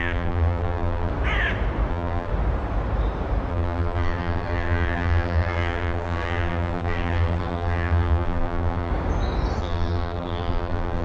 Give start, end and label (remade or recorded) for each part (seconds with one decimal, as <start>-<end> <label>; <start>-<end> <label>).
0.0-1.1 remade; 1.1-1.9 recorded; 1.9-2.3 remade; 2.3-3.5 recorded; 3.5-8.9 remade; 8.9-9.6 recorded; 9.6-11.0 remade